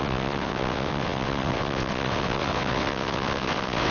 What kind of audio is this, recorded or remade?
remade